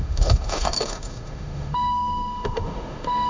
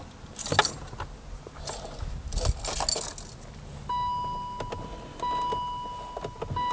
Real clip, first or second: second